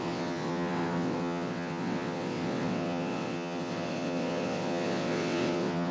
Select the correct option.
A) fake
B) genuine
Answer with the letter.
A